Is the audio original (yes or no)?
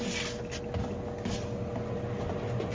yes